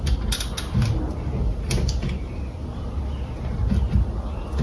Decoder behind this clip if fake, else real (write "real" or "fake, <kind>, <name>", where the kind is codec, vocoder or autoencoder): real